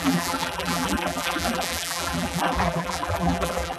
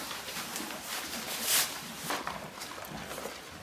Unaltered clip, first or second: second